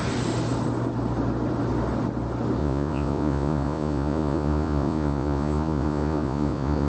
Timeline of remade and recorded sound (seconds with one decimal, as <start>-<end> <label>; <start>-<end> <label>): 0.0-2.6 recorded; 2.6-6.9 remade